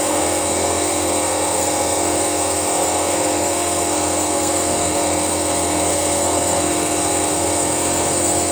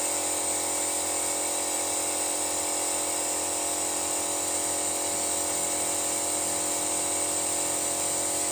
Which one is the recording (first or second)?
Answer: second